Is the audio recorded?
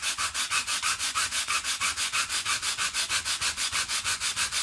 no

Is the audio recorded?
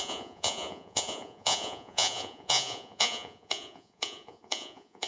no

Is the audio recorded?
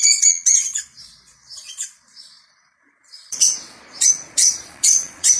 no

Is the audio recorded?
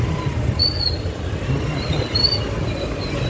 yes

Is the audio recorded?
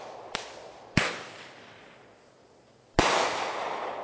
yes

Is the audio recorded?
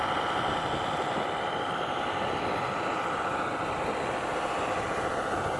yes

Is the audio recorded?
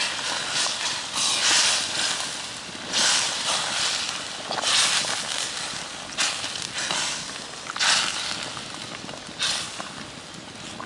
yes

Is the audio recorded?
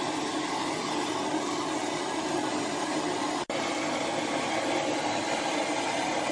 yes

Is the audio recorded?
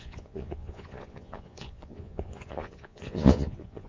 no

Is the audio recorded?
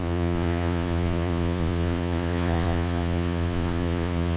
no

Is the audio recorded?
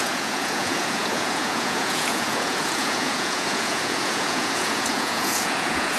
no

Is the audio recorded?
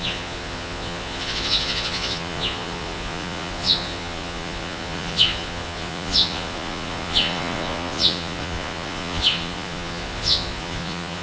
no